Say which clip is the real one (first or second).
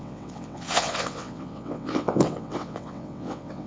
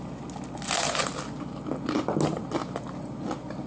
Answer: second